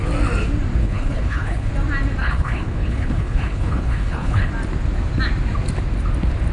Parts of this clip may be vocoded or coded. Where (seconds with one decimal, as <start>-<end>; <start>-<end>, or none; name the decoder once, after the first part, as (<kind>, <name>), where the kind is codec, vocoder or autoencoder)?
0.8-1.7 (codec, HILCodec); 2.2-4.5